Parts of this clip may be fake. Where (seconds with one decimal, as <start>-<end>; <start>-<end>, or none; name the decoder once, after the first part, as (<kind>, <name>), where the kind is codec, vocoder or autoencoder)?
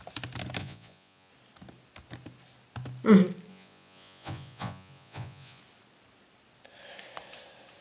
0.6-1.3 (vocoder, Vocos); 3.5-5.6